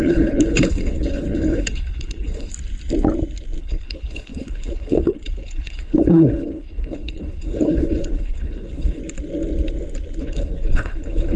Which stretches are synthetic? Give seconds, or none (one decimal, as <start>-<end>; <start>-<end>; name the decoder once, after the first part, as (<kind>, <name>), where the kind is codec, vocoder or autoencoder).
0.0-2.5 (codec, HILCodec); 3.6-9.0; 10.2-11.4